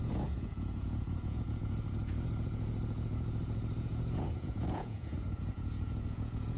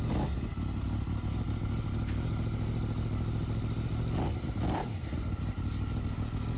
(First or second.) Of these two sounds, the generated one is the first